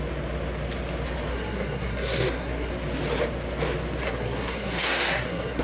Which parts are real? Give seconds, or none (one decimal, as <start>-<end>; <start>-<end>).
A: 0.0-1.3; 2.7-4.0